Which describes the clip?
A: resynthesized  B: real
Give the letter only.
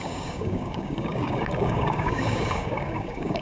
A